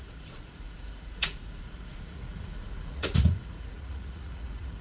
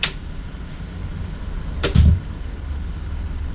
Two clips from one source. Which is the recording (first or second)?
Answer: second